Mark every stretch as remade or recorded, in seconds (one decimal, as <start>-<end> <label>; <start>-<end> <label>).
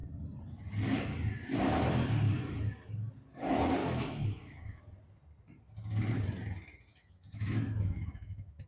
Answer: 0.0-3.8 recorded; 3.8-4.8 remade; 4.8-6.9 recorded; 6.9-8.7 remade